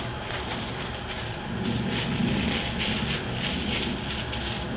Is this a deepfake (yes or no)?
no